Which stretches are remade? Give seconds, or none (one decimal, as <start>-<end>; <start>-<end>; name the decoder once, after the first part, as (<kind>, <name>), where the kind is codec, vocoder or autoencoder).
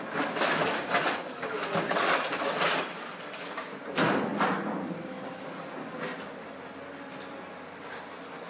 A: none